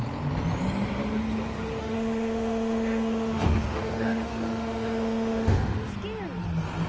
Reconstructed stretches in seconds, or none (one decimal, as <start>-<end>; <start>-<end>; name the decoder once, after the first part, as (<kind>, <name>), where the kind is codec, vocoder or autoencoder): 1.8-5.9 (autoencoder, DAC-VAE)